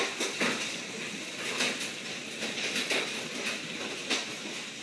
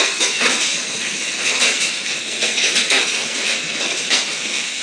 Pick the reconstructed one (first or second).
second